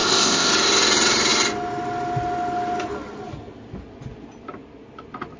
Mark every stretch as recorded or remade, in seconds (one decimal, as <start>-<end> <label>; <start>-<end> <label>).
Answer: 0.0-0.5 remade; 0.5-5.4 recorded